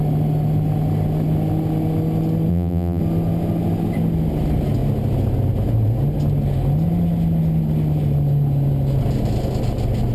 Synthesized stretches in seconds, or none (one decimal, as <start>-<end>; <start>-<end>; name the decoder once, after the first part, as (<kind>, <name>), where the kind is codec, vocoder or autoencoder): 2.5-3.0 (vocoder, BigVGAN v2)